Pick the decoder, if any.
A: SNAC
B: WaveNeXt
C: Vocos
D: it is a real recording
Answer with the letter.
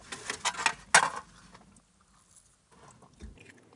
D